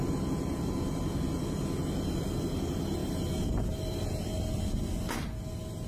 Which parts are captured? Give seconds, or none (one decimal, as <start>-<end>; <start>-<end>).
0.0-5.9